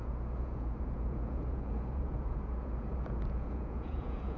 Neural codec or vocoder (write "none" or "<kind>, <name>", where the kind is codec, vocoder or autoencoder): vocoder, Vocos